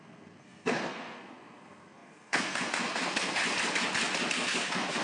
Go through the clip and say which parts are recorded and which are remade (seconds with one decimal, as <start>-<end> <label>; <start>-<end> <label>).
0.0-3.4 remade; 3.4-4.3 recorded; 4.3-5.0 remade